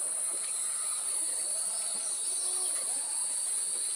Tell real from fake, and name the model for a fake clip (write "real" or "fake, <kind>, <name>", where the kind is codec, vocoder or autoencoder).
real